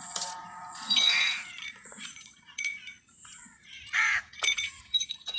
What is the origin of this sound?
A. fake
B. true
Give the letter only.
A